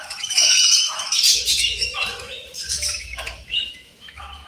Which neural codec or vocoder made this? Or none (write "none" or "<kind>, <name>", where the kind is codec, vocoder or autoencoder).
autoencoder, DAC-VAE